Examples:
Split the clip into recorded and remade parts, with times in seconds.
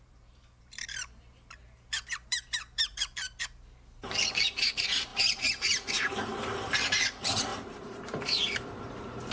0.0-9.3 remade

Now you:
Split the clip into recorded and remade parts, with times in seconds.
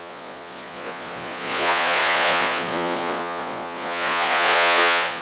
0.0-5.2 remade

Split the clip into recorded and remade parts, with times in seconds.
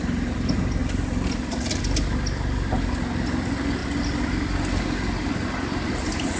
0.0-6.4 recorded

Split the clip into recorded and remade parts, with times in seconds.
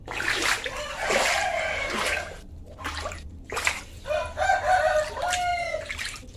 0.0-1.4 recorded; 1.4-3.8 remade; 3.8-6.4 recorded